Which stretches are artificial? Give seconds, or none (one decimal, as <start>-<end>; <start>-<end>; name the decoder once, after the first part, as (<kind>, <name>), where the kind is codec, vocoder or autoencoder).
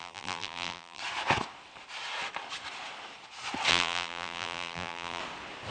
0.0-1.0 (vocoder, BigVGAN v2); 3.7-5.2